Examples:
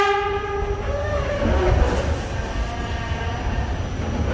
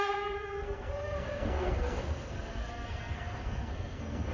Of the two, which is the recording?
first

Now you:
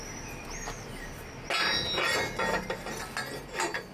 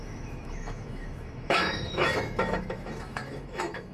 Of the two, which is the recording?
first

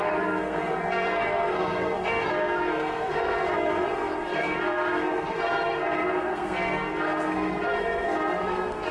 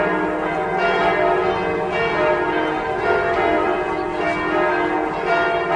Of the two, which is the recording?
second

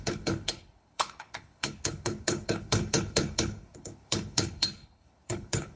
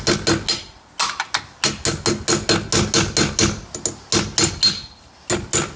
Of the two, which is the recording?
second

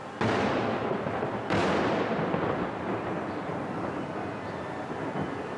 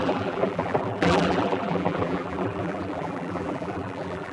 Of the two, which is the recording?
first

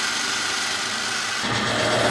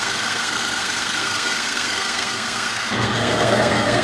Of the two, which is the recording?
first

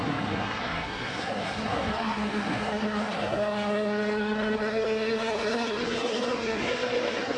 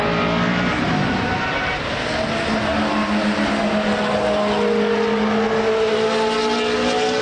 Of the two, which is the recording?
second